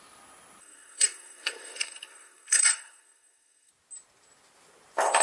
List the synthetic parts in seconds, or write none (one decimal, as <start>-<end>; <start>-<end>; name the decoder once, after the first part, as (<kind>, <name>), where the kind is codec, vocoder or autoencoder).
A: 0.6-3.7 (codec, SNAC)